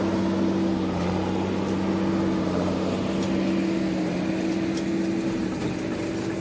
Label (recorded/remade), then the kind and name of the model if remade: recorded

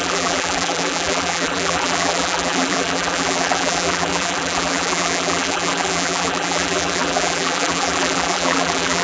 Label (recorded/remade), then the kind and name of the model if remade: remade, vocoder, BigVGAN v2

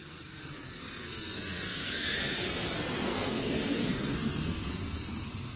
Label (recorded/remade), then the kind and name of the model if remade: remade, codec, SNAC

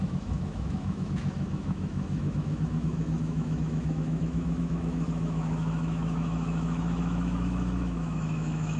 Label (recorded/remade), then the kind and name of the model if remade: remade, autoencoder, DAC-VAE